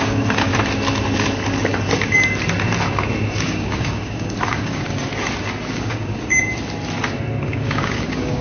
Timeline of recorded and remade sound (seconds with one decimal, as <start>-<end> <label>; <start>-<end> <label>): 0.0-0.5 remade; 0.5-3.3 recorded; 3.3-5.1 remade; 5.1-5.7 recorded; 5.7-6.3 remade; 6.3-7.4 recorded; 7.4-8.4 remade

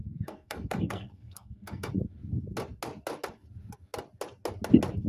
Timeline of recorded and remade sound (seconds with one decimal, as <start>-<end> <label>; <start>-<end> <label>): 0.0-1.9 remade; 1.9-5.1 recorded

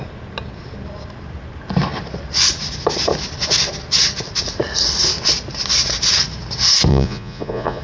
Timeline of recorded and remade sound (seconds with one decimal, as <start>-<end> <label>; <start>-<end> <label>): 0.0-6.9 recorded; 6.9-7.8 remade